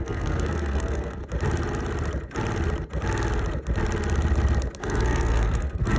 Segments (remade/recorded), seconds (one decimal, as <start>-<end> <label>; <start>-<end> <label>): 0.0-1.2 remade; 1.2-4.8 recorded; 4.8-6.0 remade

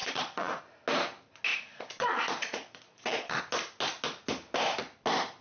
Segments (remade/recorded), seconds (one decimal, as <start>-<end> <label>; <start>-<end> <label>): 0.0-0.6 remade; 0.6-1.5 recorded; 1.5-3.4 remade; 3.4-5.4 recorded

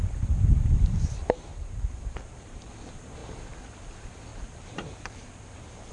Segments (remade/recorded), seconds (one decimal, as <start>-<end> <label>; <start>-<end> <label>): 0.0-1.5 recorded; 1.5-2.7 remade; 2.7-4.3 recorded; 4.3-5.9 remade

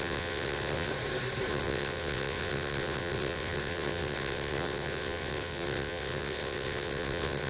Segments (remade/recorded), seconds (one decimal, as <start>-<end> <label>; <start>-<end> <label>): 0.0-0.9 remade; 0.9-1.5 recorded; 1.5-7.5 remade